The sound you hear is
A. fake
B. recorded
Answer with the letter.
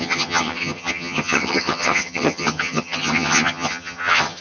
A